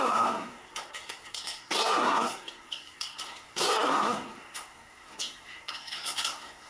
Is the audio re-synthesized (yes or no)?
yes